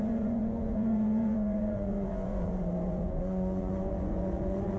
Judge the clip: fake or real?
fake